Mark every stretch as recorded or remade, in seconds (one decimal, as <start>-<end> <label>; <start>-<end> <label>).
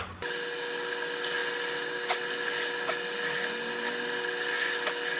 0.0-5.2 recorded